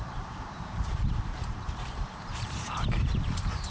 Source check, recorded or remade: remade